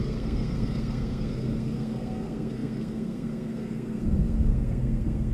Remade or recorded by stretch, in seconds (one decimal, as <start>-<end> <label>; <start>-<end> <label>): 0.0-5.3 remade